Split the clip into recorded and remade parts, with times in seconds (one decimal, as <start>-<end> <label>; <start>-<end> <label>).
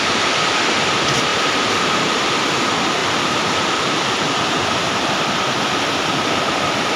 0.0-1.3 recorded; 1.3-2.3 remade; 2.3-3.0 recorded; 3.0-5.1 remade; 5.1-7.0 recorded